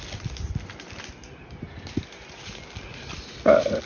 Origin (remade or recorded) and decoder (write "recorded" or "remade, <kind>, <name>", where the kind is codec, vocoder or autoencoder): recorded